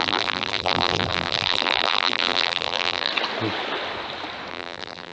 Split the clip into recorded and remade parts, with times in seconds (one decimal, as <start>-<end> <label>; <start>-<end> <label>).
0.0-3.1 remade; 3.1-4.5 recorded; 4.5-5.1 remade